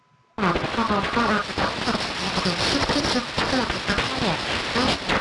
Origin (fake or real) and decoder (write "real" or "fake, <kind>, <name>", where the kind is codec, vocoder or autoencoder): real